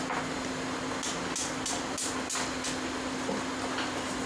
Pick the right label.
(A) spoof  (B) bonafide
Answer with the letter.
B